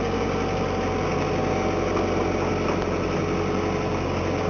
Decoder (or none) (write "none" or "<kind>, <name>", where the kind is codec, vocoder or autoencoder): none